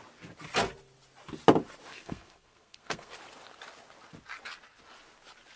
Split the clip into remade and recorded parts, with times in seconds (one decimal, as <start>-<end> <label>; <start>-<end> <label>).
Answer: 0.0-1.9 recorded; 1.9-3.2 remade; 3.2-5.6 recorded